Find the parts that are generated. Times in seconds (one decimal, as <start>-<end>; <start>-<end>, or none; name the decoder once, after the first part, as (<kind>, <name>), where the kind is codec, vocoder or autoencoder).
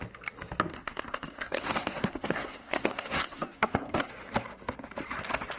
0.7-4.1 (codec, SNAC)